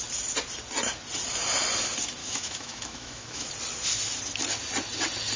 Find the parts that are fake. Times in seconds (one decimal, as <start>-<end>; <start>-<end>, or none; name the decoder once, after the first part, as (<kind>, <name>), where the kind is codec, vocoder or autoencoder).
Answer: 2.2-3.5 (autoencoder, DAC-VAE)